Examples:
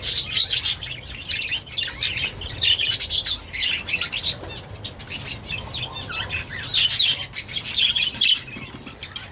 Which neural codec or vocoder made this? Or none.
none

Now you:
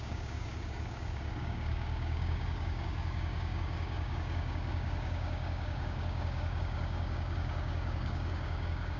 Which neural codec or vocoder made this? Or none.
codec, DAC